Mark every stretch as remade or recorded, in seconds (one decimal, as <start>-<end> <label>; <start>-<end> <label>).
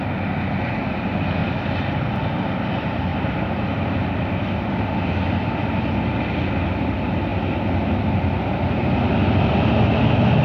0.0-1.4 recorded; 1.4-2.3 remade; 2.3-3.1 recorded; 3.1-4.6 remade; 4.6-10.4 recorded